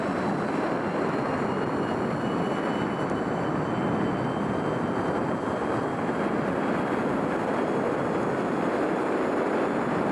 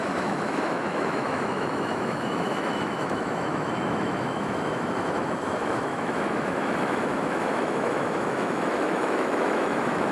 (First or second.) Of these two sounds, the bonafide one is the first